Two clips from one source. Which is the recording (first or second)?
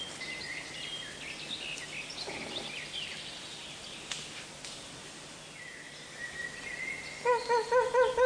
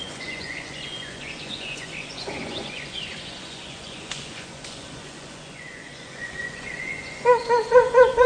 first